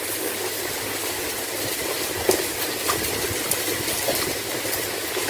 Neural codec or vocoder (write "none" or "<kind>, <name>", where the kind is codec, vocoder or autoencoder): vocoder, BigVGAN v2